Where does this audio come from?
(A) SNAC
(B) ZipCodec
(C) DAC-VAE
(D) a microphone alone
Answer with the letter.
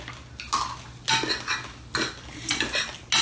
D